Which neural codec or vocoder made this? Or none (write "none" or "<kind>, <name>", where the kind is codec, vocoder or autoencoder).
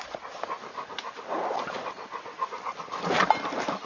none